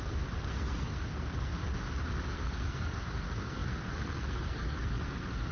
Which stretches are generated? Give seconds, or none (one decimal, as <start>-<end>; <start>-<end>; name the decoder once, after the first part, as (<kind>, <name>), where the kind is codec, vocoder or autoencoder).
0.0-1.6 (codec, SNAC); 2.3-5.5